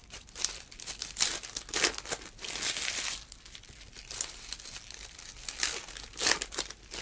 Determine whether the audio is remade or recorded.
recorded